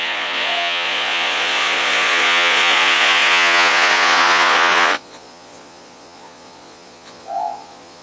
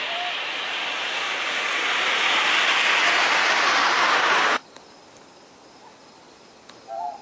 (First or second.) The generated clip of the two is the first